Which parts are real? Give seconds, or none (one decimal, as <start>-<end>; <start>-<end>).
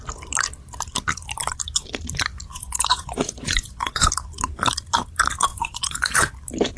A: 0.0-2.5; 4.1-5.5; 6.3-6.8